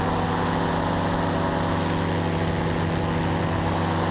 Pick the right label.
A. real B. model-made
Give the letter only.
A